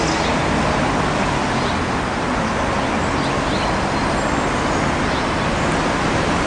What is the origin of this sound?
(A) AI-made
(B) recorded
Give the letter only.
B